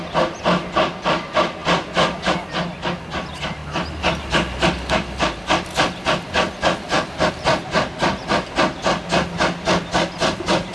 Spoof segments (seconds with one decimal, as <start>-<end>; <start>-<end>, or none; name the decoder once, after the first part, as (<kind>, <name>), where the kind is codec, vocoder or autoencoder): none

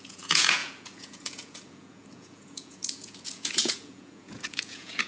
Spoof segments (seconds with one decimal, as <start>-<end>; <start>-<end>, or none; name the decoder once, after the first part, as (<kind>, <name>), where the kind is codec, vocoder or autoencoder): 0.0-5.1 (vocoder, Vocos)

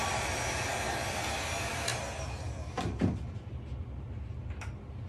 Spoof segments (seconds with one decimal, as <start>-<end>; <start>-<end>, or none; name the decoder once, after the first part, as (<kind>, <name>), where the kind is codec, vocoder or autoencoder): none

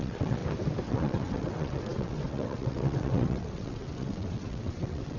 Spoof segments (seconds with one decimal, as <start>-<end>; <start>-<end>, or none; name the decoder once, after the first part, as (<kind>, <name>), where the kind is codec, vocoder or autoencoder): 0.0-0.4 (vocoder, WaveNeXt); 0.9-5.2

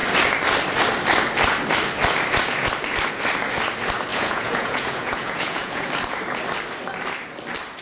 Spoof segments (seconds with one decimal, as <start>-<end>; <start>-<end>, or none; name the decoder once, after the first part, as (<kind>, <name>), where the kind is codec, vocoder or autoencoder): 4.1-5.9 (vocoder, Vocos)